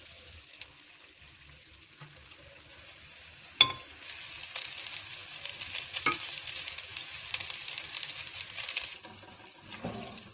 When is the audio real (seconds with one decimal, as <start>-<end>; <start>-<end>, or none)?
0.0-2.2; 3.5-5.2; 6.5-10.3